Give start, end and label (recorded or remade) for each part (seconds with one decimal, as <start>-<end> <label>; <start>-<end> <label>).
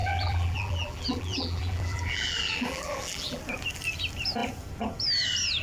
0.0-3.4 remade; 3.4-5.6 recorded